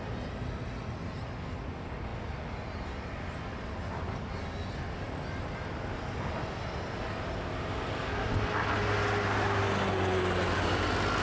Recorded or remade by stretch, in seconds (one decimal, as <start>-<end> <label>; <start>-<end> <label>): 0.0-11.2 recorded